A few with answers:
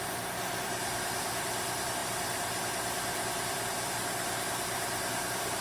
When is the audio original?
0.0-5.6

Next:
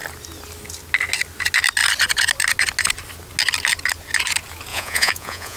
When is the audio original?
0.0-4.7

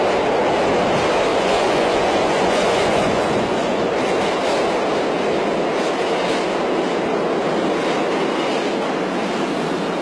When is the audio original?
0.0-1.3; 3.9-10.0

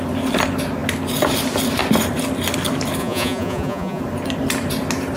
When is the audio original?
0.0-3.0; 4.0-5.2

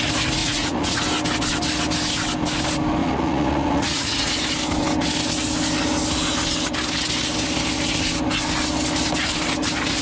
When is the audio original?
0.0-0.4; 1.0-3.0; 4.3-10.0

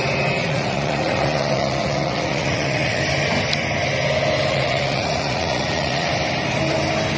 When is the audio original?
0.0-0.4; 3.0-4.5; 6.1-7.2

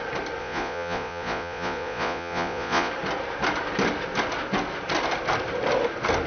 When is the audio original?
0.0-0.4; 2.9-6.3

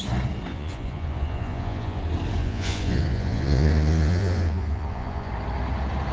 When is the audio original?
0.0-0.5; 2.0-2.4; 5.3-6.1